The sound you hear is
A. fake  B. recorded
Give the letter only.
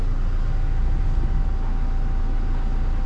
B